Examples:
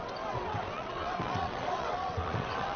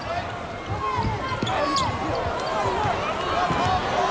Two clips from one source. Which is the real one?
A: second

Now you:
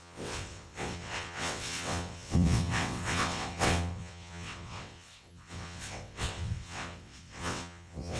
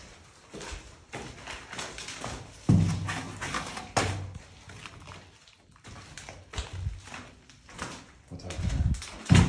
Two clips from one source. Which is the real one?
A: second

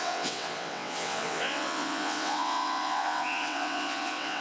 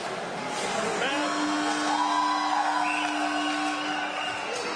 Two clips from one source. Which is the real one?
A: second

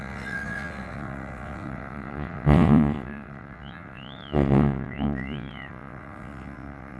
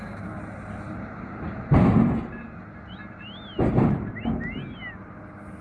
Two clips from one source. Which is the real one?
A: second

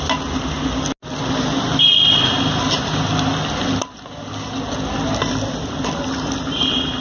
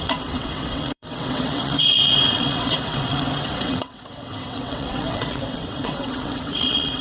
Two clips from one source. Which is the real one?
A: first